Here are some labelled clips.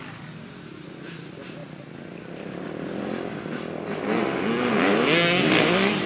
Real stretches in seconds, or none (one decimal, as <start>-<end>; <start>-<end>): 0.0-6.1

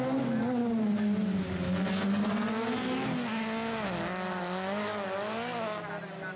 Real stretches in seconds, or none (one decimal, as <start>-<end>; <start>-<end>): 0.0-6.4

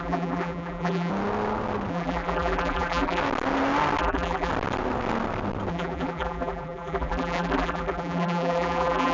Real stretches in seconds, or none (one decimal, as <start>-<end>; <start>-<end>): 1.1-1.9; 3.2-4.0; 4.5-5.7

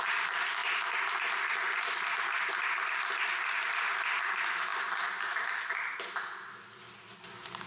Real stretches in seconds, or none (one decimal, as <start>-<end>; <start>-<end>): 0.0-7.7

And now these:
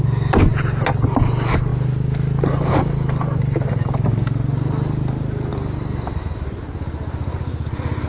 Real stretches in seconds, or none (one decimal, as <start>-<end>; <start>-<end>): 0.0-8.1

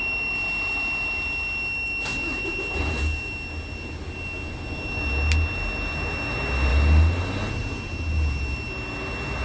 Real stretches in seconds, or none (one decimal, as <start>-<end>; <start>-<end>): 0.0-9.4

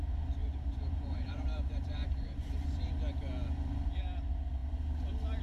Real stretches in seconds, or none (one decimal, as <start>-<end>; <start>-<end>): 0.0-0.4; 2.9-5.4

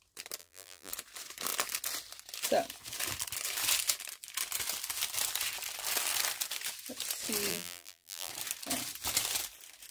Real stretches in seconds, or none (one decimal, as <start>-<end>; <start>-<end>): 0.0-0.4; 0.9-7.5; 8.3-9.9